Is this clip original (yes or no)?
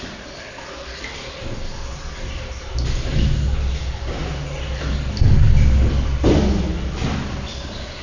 yes